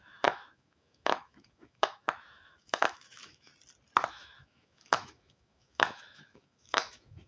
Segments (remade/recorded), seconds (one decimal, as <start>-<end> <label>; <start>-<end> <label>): 0.0-3.5 remade; 3.5-4.1 recorded; 4.1-7.3 remade